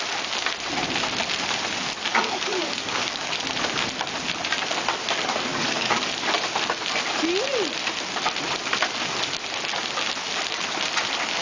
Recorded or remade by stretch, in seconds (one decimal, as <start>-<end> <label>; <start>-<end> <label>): 0.0-2.1 recorded; 2.1-3.4 remade; 3.4-5.5 recorded; 5.5-6.0 remade; 6.0-11.4 recorded